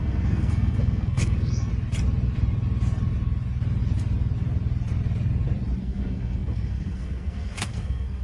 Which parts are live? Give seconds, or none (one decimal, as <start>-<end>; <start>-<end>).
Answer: 1.7-5.8